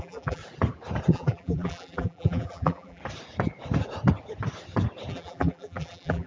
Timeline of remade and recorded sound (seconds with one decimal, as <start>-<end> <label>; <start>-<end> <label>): 0.0-0.4 remade; 0.4-1.1 recorded; 1.1-3.0 remade; 3.0-5.1 recorded; 5.1-6.3 remade